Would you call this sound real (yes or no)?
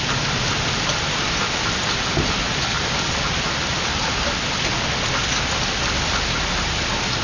yes